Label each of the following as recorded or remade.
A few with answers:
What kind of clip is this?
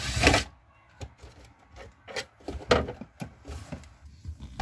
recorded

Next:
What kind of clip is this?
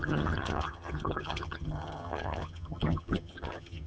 remade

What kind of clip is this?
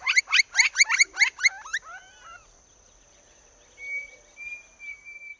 recorded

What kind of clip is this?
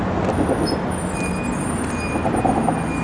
recorded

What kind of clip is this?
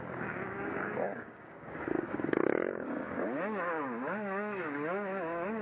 remade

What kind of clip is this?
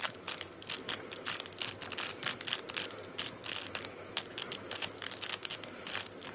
recorded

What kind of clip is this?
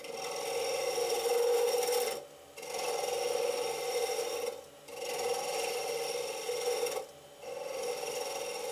recorded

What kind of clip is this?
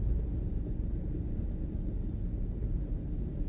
recorded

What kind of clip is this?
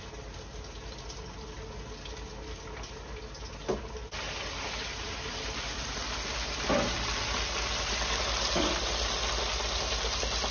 recorded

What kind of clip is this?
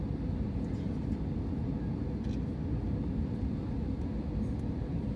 recorded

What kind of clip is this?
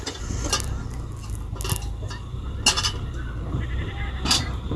recorded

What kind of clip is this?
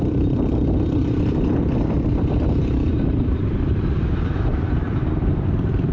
remade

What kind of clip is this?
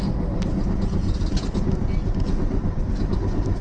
recorded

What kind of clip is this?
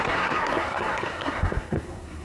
remade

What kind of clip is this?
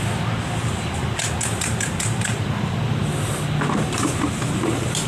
recorded